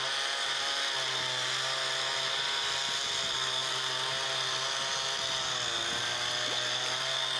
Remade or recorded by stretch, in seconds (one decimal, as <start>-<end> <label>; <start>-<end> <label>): 0.0-7.4 recorded